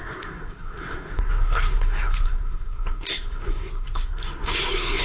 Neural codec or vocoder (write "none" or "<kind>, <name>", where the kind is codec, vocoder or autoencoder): codec, SNAC